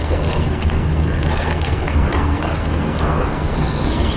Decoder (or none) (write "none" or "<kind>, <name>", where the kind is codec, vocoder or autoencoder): codec, SNAC